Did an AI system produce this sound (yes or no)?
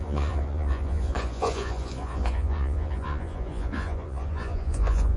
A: yes